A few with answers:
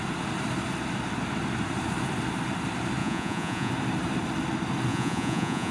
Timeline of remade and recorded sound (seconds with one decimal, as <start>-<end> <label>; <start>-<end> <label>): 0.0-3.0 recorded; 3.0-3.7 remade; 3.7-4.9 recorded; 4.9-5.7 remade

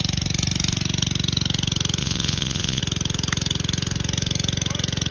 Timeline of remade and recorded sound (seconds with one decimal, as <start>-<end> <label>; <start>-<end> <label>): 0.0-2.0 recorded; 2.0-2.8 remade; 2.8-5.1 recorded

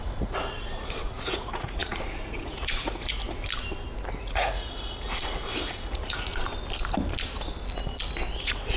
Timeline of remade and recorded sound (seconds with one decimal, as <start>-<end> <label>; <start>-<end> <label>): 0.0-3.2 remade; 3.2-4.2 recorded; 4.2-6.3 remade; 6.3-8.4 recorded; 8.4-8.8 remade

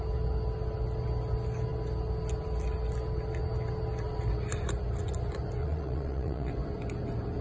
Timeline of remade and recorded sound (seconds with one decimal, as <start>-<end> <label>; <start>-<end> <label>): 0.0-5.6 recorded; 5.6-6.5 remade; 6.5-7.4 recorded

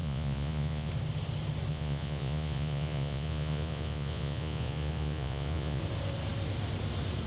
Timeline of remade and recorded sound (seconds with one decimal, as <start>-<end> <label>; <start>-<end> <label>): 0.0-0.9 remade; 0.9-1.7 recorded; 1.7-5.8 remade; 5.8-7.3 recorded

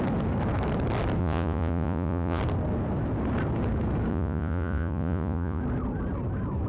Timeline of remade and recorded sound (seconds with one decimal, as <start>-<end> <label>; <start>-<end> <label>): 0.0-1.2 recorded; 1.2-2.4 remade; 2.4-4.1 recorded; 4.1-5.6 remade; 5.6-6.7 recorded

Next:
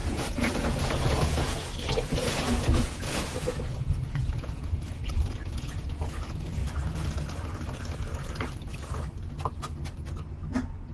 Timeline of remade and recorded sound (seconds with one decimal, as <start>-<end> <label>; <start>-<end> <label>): 0.0-6.6 remade; 6.6-10.2 recorded; 10.2-10.9 remade

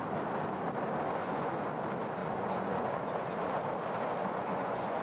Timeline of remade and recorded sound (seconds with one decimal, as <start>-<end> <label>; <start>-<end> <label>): 0.0-1.2 recorded; 1.2-1.7 remade; 1.7-2.2 recorded; 2.2-3.6 remade; 3.6-4.2 recorded; 4.2-5.0 remade